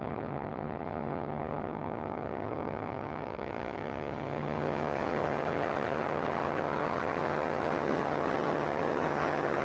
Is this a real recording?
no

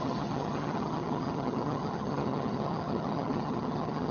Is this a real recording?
no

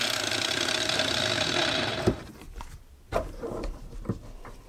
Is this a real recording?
no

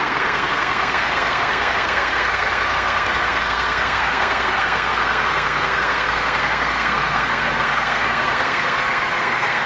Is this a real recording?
no